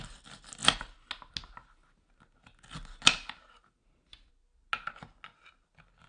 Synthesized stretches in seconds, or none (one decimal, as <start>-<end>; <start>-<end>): none